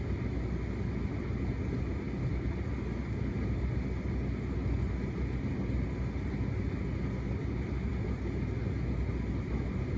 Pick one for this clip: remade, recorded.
recorded